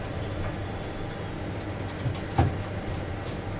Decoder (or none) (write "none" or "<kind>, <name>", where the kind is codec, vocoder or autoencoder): none